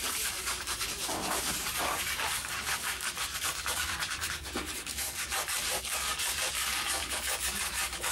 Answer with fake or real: fake